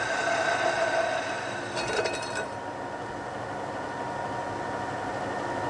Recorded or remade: recorded